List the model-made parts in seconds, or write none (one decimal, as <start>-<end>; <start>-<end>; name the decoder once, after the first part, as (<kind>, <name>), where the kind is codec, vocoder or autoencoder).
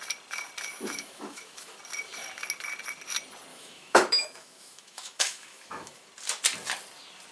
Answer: 0.7-1.8 (autoencoder, DAC-VAE); 3.5-6.1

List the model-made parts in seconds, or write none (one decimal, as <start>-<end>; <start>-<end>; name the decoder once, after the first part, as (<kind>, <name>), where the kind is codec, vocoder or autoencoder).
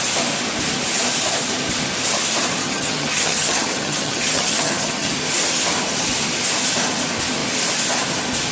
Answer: 2.6-5.1 (vocoder, HiFi-GAN)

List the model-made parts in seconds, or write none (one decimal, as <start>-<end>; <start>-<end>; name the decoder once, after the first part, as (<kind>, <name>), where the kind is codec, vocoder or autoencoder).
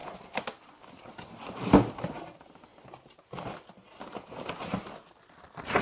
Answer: none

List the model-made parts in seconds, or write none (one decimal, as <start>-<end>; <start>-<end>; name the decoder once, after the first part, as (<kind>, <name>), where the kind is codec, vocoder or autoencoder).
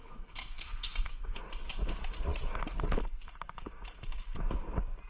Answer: 0.0-1.4 (codec, SNAC)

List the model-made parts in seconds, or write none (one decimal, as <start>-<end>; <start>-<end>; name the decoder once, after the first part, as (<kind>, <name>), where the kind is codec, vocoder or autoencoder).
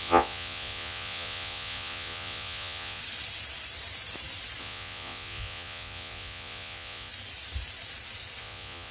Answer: 0.0-3.0 (vocoder, Vocos); 4.6-7.1; 8.4-8.9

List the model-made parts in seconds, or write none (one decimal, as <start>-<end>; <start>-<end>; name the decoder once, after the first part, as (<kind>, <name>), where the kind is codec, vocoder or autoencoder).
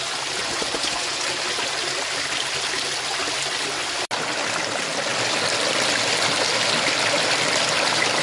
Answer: 0.4-1.2 (vocoder, Vocos)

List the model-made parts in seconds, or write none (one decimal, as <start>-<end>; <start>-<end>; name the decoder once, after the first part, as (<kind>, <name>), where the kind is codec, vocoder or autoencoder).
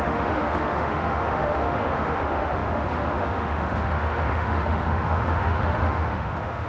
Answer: 0.0-6.7 (autoencoder, DAC-VAE)